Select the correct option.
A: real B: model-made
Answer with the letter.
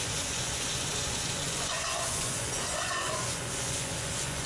B